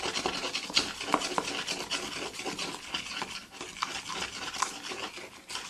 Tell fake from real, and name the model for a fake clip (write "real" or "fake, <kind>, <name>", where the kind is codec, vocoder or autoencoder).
real